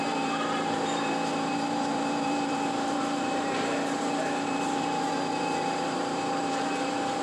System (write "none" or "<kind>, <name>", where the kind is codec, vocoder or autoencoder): vocoder, BigVGAN v2